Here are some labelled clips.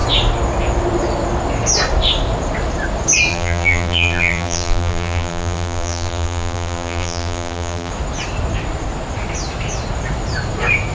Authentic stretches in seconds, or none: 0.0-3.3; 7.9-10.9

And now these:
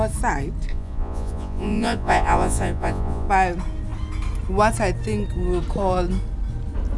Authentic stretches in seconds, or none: 0.0-0.7; 3.3-7.0

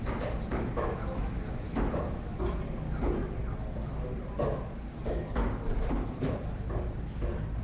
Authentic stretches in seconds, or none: 0.0-0.5; 2.0-7.6

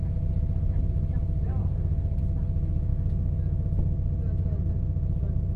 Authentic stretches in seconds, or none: 0.0-1.6; 2.2-5.6

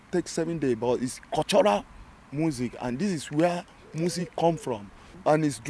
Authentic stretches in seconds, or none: 0.0-5.7

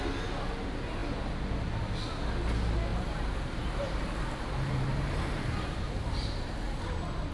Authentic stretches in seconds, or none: 0.0-2.9; 6.8-7.3

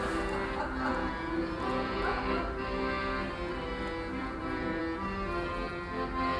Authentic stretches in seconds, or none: 0.0-0.9; 2.2-4.2; 4.8-6.4